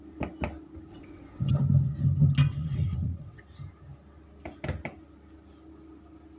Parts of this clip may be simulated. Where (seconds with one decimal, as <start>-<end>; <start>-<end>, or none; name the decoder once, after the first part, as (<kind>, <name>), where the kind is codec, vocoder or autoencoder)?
0.9-1.5 (vocoder, WaveNeXt); 2.4-3.4